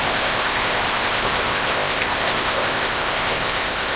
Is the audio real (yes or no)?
no